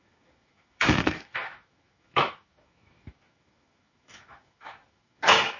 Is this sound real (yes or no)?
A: no